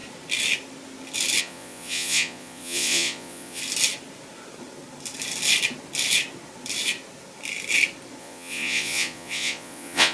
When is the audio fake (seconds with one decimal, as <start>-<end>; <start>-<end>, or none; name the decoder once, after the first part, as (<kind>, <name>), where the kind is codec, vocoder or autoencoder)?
1.4-3.6 (vocoder, Vocos); 8.2-10.1